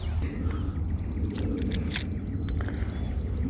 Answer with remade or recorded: recorded